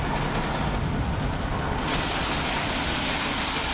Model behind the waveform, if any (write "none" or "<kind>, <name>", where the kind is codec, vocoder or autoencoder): none